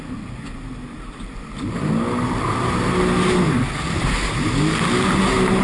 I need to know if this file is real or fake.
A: real